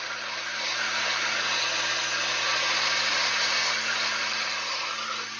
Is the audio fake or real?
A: real